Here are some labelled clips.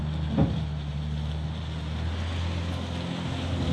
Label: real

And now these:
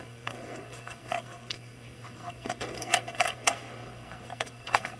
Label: fake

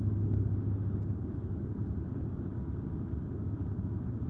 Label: real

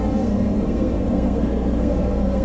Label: fake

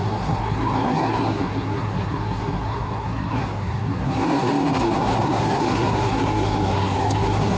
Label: fake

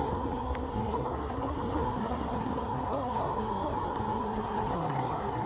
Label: fake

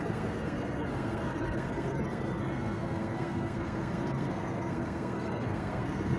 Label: fake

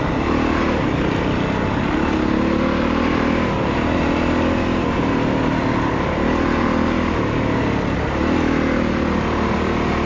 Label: real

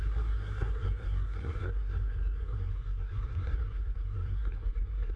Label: fake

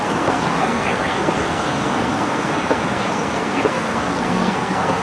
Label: fake